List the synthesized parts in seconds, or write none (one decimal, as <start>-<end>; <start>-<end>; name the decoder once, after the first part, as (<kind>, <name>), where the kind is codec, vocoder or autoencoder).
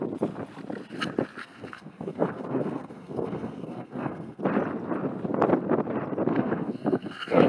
1.4-4.4 (codec, SNAC); 6.3-7.5